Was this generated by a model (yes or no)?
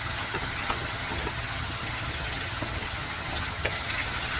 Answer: yes